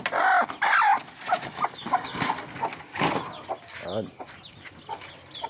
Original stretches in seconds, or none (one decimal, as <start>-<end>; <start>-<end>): 0.0-5.5